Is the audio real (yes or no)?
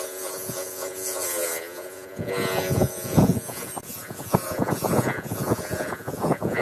no